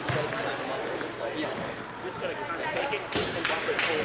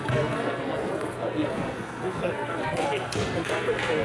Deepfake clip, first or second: second